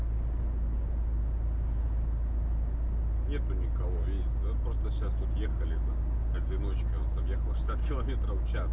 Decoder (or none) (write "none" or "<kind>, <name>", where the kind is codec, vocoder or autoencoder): none